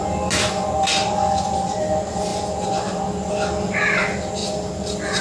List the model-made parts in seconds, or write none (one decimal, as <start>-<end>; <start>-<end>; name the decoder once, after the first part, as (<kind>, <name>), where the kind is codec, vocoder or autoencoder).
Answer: 2.3-3.0 (vocoder, BigVGAN v2); 4.4-5.2